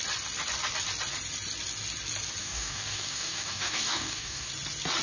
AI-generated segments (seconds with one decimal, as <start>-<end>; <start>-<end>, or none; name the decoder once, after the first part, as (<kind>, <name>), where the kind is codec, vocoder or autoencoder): 2.4-4.5 (codec, DAC)